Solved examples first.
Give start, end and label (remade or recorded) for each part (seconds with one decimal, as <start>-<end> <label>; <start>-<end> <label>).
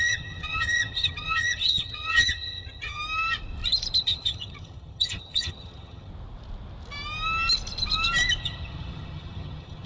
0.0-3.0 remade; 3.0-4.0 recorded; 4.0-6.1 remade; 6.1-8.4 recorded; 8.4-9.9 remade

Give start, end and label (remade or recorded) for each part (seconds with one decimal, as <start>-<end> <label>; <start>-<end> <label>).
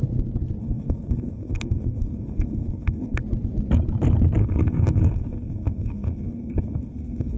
0.0-0.6 recorded; 0.6-3.2 remade; 3.2-4.4 recorded; 4.4-7.4 remade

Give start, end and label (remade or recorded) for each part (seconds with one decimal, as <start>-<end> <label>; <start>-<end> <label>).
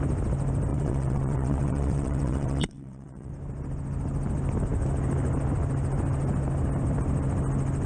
0.0-0.7 recorded; 0.7-3.3 remade; 3.3-7.9 recorded